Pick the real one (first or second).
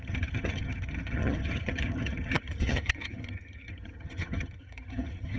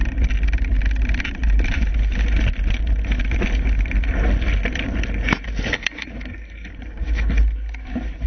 second